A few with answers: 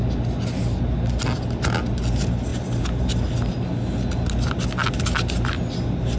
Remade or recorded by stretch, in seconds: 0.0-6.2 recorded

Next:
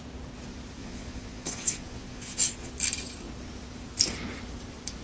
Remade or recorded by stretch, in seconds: 0.0-0.8 recorded; 0.8-2.7 remade; 2.7-5.0 recorded

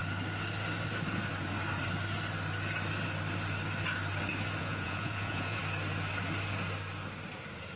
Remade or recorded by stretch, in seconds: 0.0-4.6 recorded; 4.6-5.6 remade; 5.6-7.8 recorded

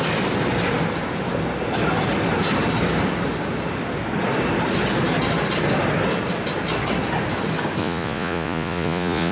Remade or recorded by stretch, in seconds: 0.0-7.8 recorded; 7.8-9.3 remade

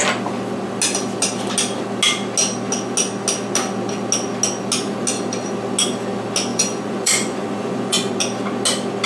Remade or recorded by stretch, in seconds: 0.0-6.5 recorded; 6.5-8.1 remade; 8.1-9.1 recorded

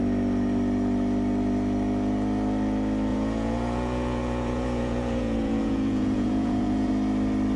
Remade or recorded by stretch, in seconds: 0.0-3.1 recorded; 3.1-6.9 remade; 6.9-7.6 recorded

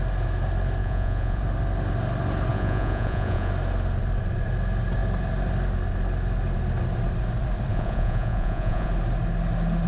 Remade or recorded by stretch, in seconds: 0.0-0.8 recorded; 0.8-1.4 remade; 1.4-2.5 recorded; 2.5-3.5 remade; 3.5-7.7 recorded; 7.7-8.9 remade; 8.9-9.9 recorded